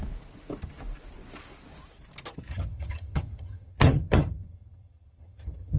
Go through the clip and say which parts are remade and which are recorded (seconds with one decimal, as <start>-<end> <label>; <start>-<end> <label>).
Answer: 0.0-2.5 recorded; 2.5-5.8 remade